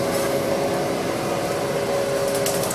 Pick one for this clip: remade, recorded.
recorded